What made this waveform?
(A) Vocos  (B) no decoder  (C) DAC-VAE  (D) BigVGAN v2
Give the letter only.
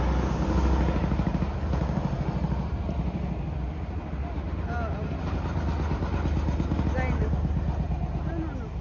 B